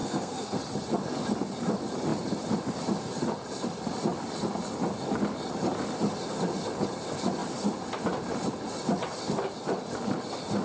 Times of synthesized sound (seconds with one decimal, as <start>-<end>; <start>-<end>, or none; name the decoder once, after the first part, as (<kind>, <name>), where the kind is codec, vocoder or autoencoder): 0.0-0.6 (codec, SNAC)